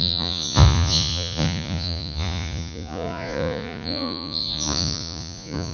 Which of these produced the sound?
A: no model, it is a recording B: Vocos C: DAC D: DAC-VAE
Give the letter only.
B